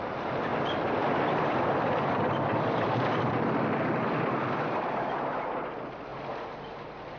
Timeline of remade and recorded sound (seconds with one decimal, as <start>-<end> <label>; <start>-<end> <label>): 0.0-0.5 recorded; 0.5-4.8 remade; 4.8-6.1 recorded; 6.1-6.7 remade; 6.7-7.2 recorded